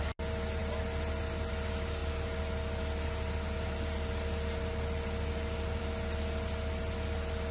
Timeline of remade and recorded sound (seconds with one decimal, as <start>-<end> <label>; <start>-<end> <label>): 0.0-7.5 recorded